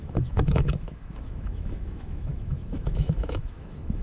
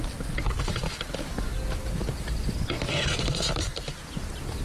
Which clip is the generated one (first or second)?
first